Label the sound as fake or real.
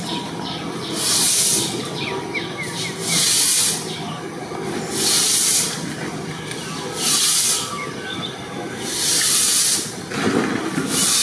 real